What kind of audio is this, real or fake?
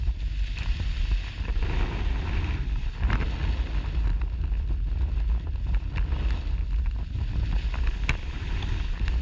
real